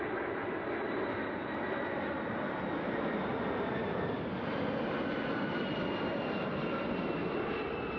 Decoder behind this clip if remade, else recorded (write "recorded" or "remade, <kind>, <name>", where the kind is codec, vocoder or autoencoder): recorded